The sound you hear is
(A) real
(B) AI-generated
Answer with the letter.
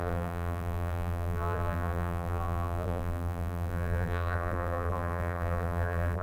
B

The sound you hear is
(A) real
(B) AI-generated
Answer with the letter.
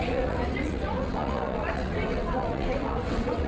B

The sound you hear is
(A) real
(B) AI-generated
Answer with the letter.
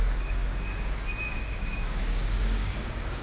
B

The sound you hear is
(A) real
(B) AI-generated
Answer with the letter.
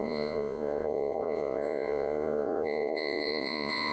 B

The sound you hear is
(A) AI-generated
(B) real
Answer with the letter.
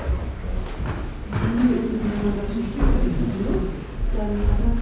B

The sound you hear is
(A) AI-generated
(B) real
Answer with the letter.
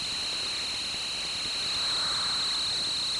B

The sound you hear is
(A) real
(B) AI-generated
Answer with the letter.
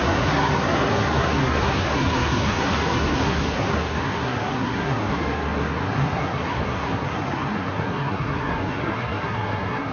B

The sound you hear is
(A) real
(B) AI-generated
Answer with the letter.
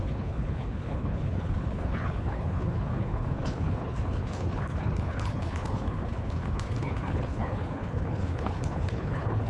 B